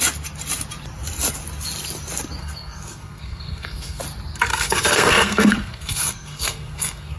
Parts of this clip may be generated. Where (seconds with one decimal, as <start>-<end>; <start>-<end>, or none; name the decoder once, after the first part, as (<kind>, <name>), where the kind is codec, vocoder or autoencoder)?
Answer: 2.4-4.0 (codec, SNAC); 4.5-7.2